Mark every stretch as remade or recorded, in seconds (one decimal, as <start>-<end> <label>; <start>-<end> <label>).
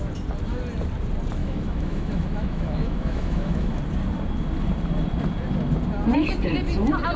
0.0-1.4 recorded; 1.4-3.8 remade; 3.8-7.2 recorded